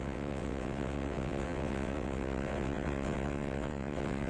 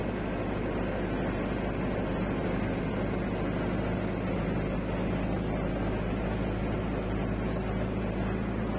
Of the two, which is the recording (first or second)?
second